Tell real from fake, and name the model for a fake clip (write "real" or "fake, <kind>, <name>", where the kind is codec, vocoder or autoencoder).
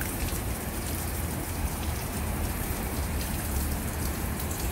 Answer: fake, vocoder, BigVGAN v2